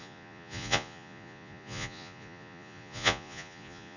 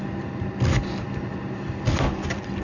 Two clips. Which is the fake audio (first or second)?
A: first